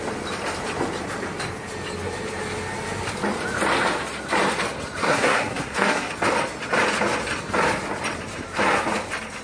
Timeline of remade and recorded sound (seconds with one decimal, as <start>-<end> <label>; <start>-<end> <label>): 0.0-5.0 recorded; 5.0-6.1 remade; 6.1-9.4 recorded